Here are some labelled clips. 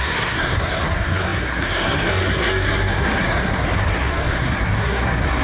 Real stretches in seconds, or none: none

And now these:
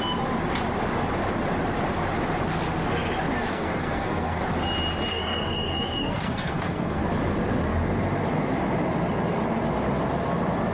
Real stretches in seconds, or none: 0.0-3.5; 4.4-5.1; 7.0-10.7

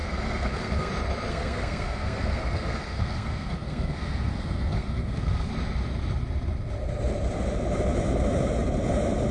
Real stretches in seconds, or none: 0.9-1.3; 5.5-9.3

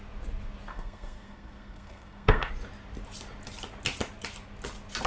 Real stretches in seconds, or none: 0.0-0.7; 2.5-5.1

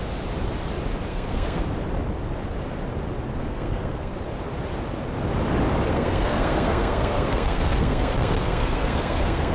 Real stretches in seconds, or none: 0.0-1.1; 1.6-3.4; 4.1-5.9